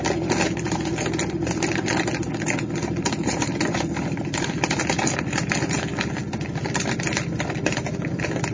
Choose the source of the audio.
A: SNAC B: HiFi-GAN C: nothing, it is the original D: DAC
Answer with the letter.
C